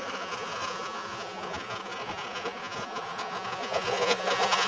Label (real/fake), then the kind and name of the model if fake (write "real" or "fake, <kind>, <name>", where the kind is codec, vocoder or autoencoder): fake, vocoder, Vocos